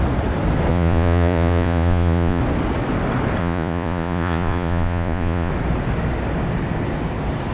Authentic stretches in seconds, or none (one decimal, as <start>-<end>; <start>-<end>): 0.0-0.7; 2.4-3.4; 5.5-7.5